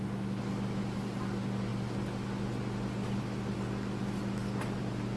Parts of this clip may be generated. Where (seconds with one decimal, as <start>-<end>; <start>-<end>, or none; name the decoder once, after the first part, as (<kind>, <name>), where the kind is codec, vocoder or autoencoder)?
none